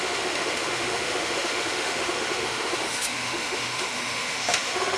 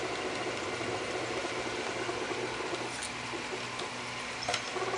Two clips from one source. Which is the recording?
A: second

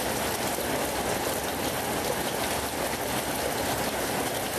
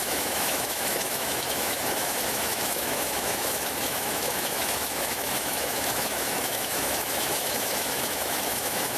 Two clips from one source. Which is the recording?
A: first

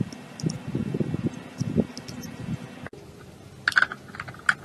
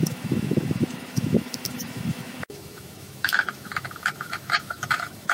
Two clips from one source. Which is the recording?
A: first